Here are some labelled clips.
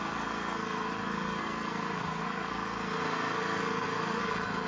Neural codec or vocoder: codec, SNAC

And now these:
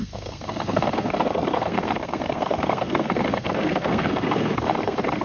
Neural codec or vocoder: codec, SNAC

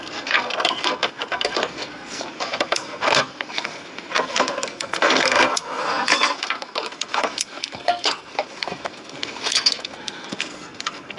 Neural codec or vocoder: codec, SNAC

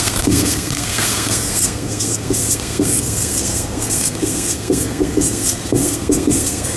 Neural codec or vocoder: codec, SNAC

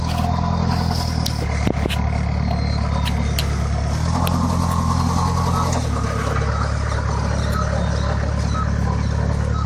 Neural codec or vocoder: none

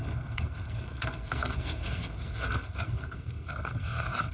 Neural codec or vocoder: codec, SNAC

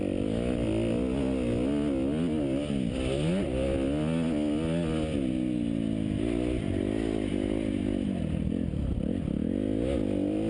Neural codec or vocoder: none